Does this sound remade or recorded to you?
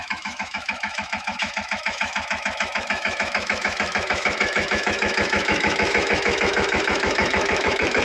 remade